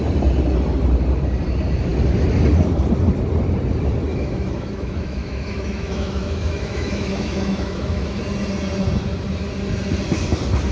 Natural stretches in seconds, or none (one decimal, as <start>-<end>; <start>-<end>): 0.0-4.1; 8.2-10.7